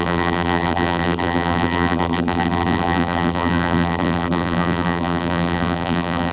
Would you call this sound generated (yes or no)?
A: yes